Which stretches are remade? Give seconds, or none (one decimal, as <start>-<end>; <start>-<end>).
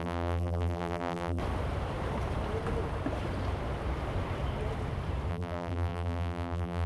0.0-1.4; 5.3-6.9